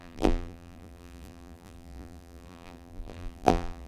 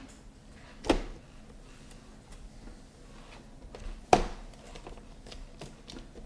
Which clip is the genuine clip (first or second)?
second